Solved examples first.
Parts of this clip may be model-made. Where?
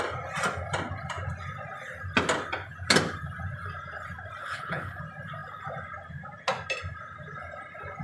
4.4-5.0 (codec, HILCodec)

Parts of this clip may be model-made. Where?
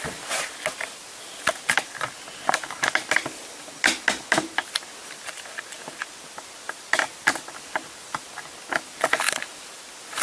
none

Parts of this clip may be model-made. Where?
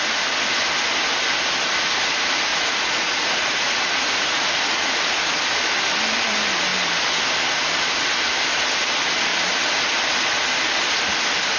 2.5-5.4 (vocoder, Vocos)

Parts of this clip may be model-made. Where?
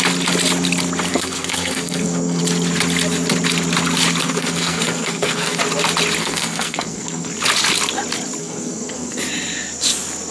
1.1-2.4 (codec, SNAC); 4.2-5.6; 6.2-7.3; 8.4-9.2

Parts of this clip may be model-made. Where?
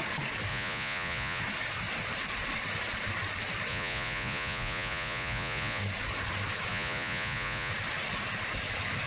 0.5-1.4 (vocoder, Vocos); 3.7-5.8; 6.7-7.7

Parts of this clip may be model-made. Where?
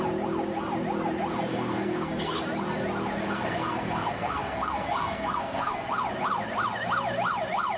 1.5-2.4 (codec, SNAC); 3.2-5.9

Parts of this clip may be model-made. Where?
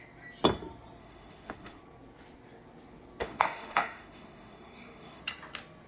1.0-1.8 (autoencoder, DAC-VAE); 3.2-5.2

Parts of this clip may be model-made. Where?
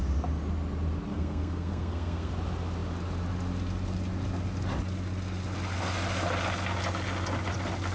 1.1-2.3 (codec, SNAC)